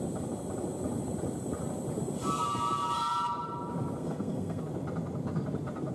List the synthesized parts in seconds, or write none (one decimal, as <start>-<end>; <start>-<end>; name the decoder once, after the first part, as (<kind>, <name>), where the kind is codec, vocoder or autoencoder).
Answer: 4.0-4.6 (codec, SNAC)